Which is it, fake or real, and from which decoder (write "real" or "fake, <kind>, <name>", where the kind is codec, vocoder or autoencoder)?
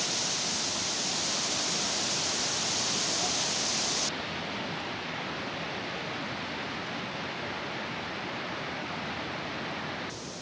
real